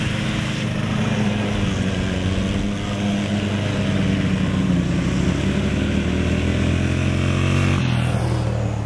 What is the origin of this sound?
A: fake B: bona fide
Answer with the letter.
B